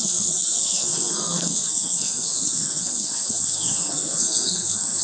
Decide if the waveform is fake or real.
fake